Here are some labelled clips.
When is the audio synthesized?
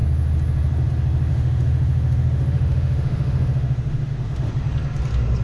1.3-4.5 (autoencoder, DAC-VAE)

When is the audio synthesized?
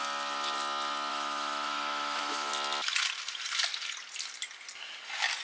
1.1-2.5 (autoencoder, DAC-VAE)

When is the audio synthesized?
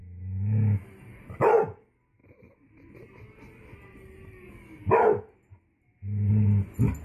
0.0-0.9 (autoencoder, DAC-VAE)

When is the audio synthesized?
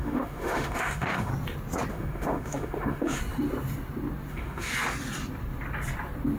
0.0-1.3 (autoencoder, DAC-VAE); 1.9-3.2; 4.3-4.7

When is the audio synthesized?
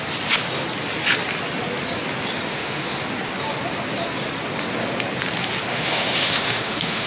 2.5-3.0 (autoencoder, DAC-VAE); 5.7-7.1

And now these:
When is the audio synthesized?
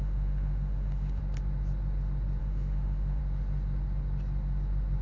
0.0-1.2 (autoencoder, DAC-VAE); 2.4-3.2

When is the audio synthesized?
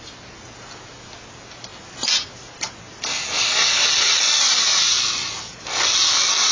none